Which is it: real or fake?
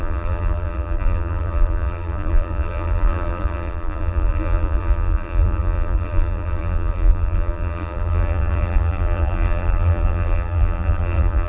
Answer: fake